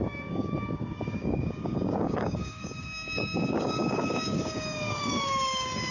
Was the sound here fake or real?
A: fake